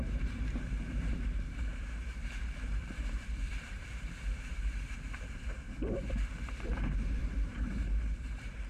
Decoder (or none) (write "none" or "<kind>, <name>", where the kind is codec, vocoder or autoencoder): vocoder, BigVGAN v2